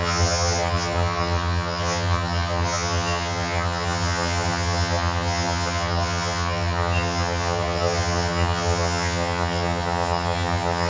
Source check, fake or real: fake